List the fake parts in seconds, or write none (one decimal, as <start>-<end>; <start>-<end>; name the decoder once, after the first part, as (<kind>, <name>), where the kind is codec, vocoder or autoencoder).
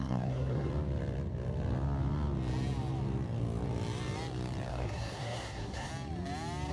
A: 0.0-0.7 (codec, SNAC); 4.7-5.9